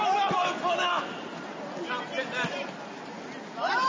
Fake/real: real